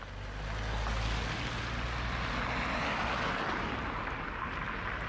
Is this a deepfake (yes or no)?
no